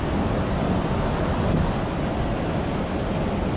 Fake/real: real